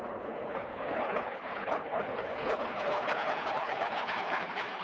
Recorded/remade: remade